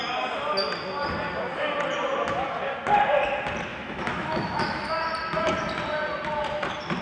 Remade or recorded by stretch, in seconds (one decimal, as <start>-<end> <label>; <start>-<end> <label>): 0.0-3.7 recorded; 3.7-4.9 remade; 4.9-7.0 recorded